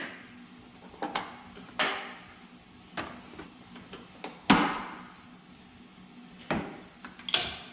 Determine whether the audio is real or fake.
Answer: real